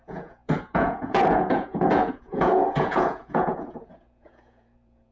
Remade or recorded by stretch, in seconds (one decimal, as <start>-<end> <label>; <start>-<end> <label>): 0.0-5.1 remade